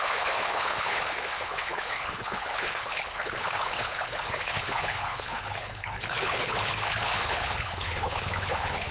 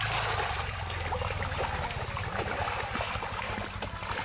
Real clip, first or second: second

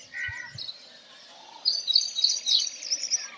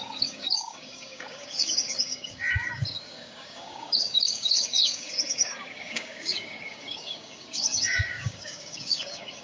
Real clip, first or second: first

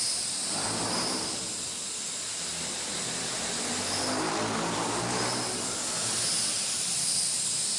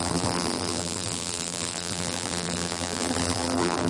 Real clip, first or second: first